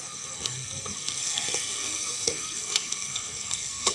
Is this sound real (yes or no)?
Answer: no